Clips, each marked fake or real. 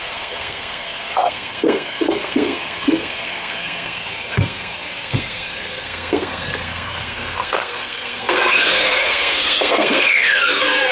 fake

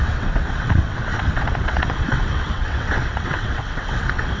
fake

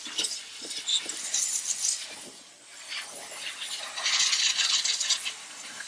real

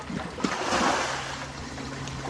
real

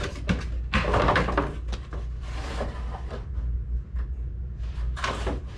real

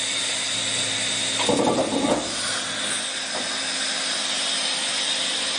real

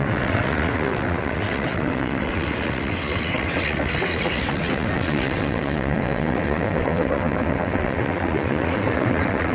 fake